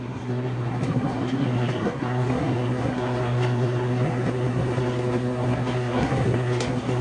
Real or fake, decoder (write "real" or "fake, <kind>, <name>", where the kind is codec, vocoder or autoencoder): fake, codec, SNAC